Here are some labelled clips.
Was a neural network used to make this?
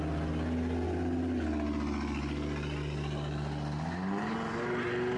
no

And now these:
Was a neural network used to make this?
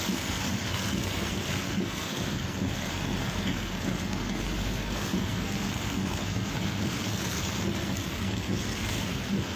yes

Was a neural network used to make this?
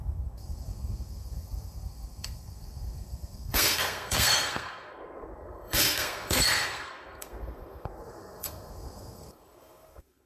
yes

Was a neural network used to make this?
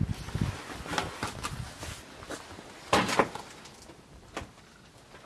no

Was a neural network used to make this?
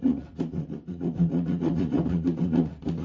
yes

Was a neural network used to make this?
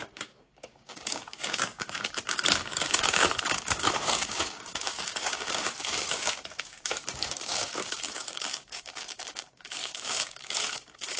yes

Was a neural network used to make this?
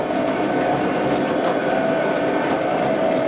no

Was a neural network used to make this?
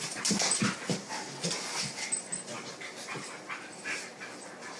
no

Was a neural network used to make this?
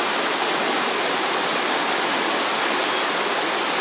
no